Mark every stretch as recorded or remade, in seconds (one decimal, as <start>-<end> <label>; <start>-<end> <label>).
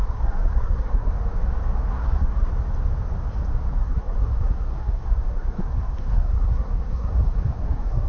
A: 0.0-1.1 remade; 1.1-1.9 recorded; 1.9-2.5 remade; 2.5-3.8 recorded; 3.8-8.1 remade